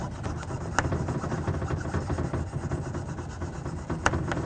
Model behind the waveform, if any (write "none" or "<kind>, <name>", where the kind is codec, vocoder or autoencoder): none